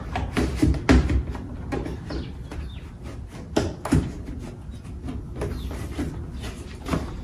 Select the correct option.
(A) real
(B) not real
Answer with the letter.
A